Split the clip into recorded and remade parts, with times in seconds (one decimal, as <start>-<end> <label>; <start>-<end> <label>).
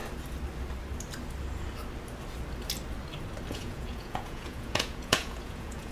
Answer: 0.0-3.5 recorded; 3.5-5.9 remade